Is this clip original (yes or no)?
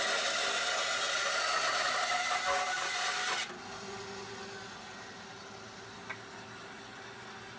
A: yes